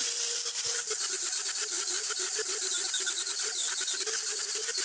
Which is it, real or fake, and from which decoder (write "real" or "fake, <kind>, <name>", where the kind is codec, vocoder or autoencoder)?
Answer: real